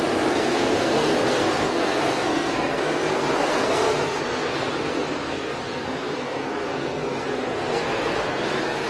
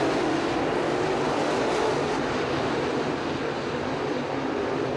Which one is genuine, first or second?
second